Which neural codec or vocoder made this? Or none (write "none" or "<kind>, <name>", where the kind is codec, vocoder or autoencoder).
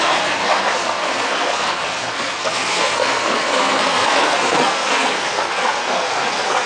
codec, SNAC